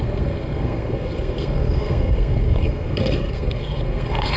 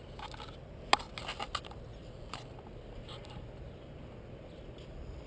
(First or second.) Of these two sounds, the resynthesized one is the first